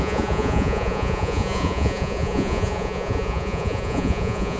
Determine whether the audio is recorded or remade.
remade